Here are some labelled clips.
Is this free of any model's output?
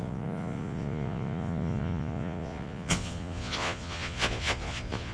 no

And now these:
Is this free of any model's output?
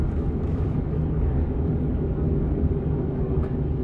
no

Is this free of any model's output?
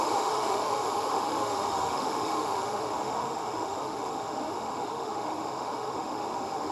no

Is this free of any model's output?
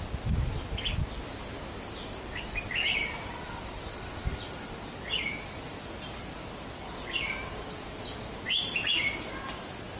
yes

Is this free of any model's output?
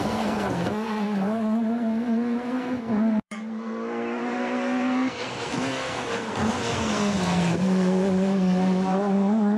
no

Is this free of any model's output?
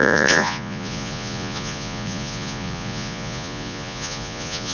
no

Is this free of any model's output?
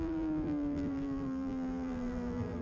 no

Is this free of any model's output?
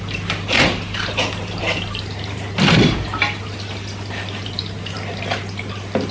no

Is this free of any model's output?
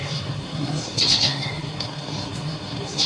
no